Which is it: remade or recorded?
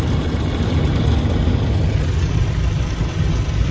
recorded